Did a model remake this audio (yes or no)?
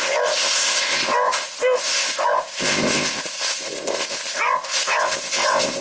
yes